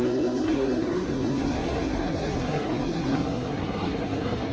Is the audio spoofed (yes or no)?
yes